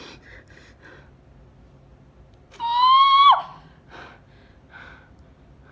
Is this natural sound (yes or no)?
yes